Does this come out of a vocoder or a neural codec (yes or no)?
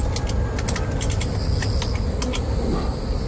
no